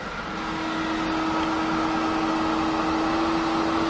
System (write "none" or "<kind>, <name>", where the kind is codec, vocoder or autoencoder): none